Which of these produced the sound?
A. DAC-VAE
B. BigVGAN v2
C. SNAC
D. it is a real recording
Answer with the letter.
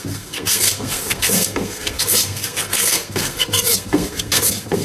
C